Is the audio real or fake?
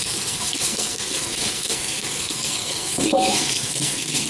fake